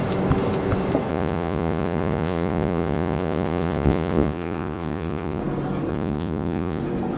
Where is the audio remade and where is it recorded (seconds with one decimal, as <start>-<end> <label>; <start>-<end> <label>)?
0.0-1.1 recorded; 1.1-5.4 remade; 5.4-5.9 recorded; 5.9-6.8 remade; 6.8-7.2 recorded